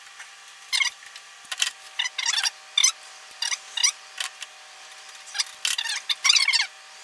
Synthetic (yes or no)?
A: no